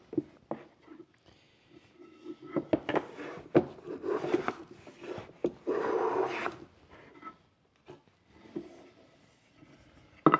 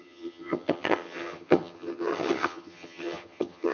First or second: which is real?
first